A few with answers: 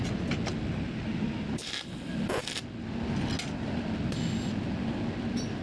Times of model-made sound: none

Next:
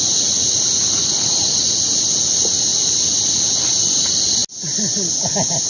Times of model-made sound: 2.7-3.5 (vocoder, BigVGAN v2)

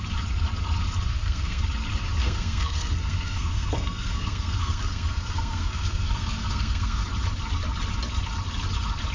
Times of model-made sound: 1.1-1.6 (codec, SNAC); 2.2-7.0

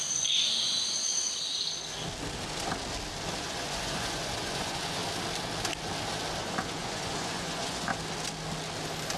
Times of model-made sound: 0.0-1.1 (vocoder, Vocos); 3.4-5.0; 6.4-7.9

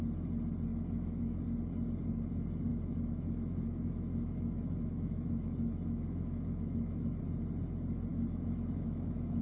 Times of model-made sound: 0.7-1.4 (autoencoder, DAC-VAE); 2.7-7.2; 8.1-9.4